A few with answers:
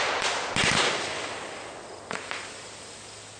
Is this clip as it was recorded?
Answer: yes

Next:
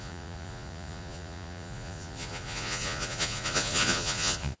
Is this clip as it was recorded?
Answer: no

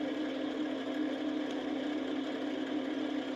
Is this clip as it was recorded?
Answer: yes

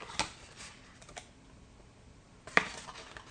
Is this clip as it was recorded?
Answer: yes